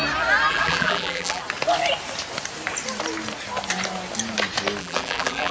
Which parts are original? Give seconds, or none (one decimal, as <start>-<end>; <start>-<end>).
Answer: 0.0-0.5; 1.4-4.8